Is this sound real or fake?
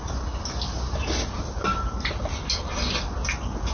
real